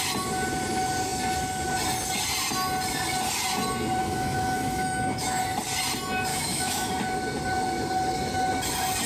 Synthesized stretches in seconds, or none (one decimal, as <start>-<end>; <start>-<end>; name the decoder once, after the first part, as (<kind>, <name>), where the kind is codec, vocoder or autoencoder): 4.0-5.4 (autoencoder, DAC-VAE); 6.3-6.9